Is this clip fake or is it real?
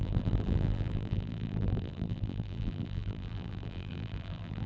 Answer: fake